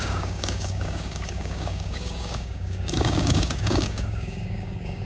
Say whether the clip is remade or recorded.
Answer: remade